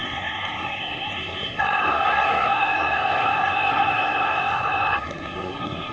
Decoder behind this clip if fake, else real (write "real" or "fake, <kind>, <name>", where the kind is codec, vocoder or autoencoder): fake, codec, SNAC